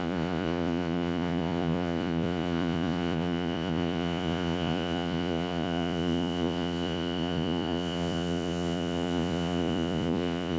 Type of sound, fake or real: fake